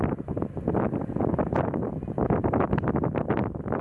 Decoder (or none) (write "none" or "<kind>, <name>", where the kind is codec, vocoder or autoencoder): none